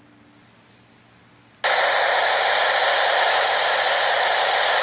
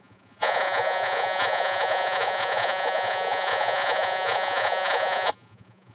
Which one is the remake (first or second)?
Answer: second